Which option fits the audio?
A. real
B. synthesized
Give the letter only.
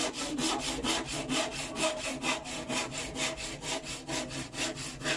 A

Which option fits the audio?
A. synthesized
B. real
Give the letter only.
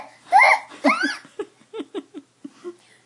B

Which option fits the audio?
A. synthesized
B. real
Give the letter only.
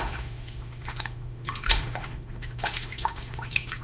A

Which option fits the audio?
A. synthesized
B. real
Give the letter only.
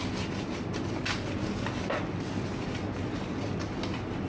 B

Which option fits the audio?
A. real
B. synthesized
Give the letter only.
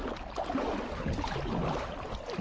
A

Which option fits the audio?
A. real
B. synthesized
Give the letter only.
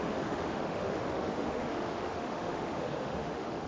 B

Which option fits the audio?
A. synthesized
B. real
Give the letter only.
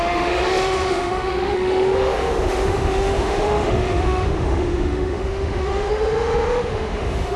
A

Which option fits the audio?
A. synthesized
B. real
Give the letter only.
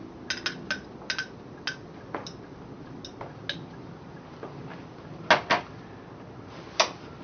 B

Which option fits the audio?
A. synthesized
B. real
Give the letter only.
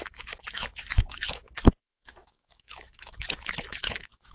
A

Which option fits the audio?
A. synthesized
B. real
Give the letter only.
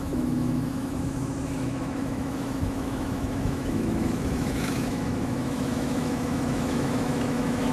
A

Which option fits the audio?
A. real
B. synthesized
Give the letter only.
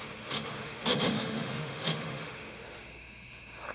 B